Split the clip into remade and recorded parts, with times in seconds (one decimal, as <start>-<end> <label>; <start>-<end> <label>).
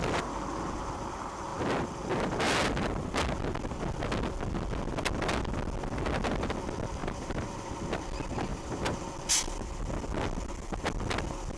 0.0-7.0 recorded; 7.0-7.7 remade; 7.7-8.5 recorded; 8.5-9.0 remade; 9.0-11.6 recorded